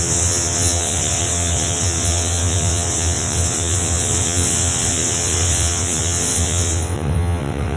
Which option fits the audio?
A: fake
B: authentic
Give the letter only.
A